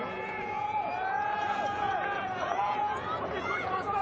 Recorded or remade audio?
remade